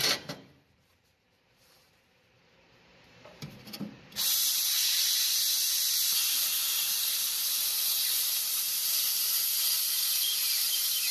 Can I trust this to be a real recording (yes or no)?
no